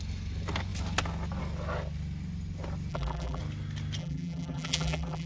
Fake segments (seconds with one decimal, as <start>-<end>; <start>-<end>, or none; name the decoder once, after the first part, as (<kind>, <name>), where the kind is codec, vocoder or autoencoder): 2.9-3.4 (vocoder, BigVGAN v2); 4.0-5.3